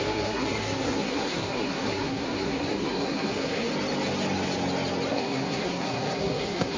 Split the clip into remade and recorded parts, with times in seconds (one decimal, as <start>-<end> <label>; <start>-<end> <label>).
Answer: 0.0-3.7 remade; 3.7-5.1 recorded; 5.1-6.8 remade